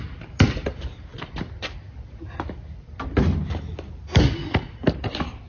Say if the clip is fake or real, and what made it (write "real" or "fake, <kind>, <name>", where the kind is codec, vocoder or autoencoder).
real